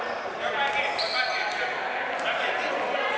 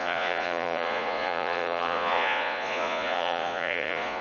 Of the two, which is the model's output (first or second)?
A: second